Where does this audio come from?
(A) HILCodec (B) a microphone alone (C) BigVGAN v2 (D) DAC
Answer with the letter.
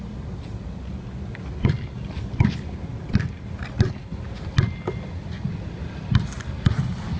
B